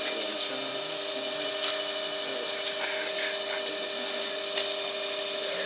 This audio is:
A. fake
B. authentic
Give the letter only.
B